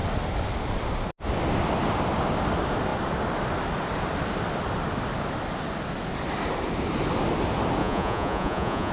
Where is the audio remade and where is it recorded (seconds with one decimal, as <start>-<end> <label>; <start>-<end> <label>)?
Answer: 0.0-7.8 recorded; 7.8-8.9 remade